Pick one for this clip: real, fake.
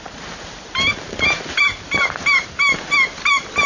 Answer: real